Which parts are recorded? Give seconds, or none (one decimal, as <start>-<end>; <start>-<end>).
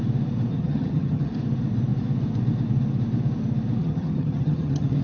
0.0-0.5; 1.3-3.8